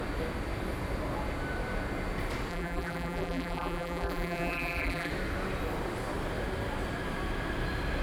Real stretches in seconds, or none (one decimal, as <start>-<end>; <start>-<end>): 0.0-2.5; 5.1-8.0